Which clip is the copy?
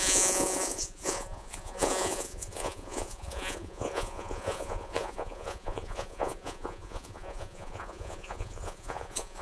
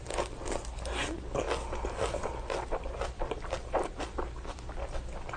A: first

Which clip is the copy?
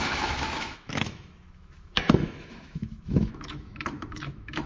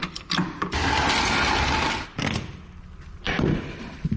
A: first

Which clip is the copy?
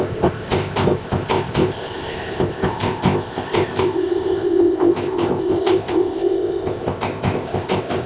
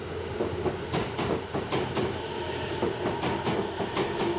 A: first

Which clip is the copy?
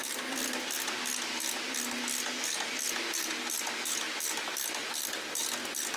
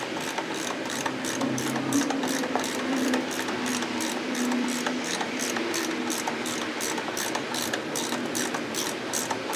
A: second